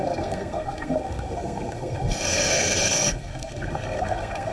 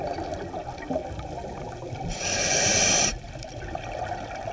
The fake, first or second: first